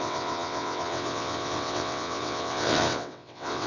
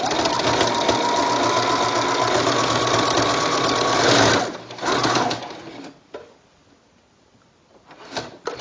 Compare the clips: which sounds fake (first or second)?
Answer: first